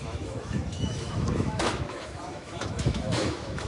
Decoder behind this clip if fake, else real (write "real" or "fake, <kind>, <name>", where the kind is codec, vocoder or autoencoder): fake, autoencoder, DAC-VAE